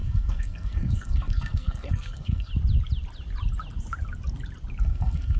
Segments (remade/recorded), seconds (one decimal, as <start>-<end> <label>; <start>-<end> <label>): 0.0-2.5 remade; 2.5-4.8 recorded; 4.8-5.4 remade